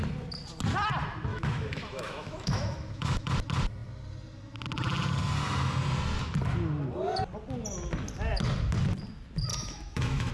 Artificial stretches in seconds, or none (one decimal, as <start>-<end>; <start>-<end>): 1.3-3.3; 9.5-10.3